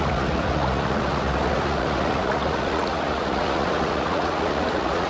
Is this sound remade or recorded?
remade